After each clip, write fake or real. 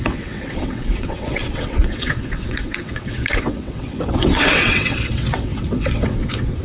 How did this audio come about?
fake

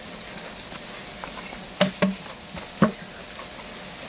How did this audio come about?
real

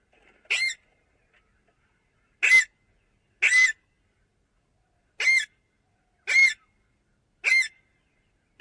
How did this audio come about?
real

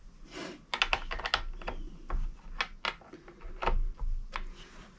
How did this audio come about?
real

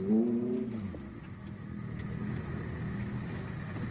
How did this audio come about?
real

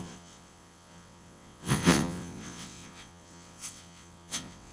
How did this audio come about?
fake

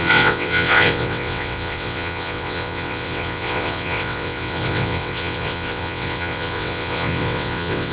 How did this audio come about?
fake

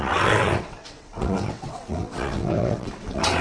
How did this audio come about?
fake